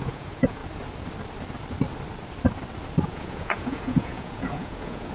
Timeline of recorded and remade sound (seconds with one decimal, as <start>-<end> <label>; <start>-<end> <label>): 0.0-0.6 remade; 0.6-3.1 recorded; 3.1-5.1 remade